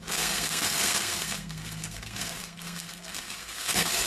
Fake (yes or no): yes